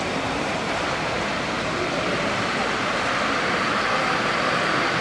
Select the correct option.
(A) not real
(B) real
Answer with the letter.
A